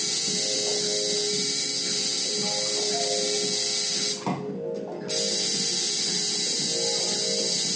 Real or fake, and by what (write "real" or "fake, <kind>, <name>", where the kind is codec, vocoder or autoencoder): real